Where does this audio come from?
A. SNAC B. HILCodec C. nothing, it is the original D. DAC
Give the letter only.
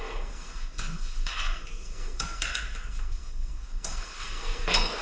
A